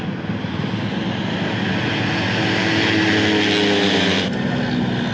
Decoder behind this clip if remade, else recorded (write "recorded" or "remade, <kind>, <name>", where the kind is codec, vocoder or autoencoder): recorded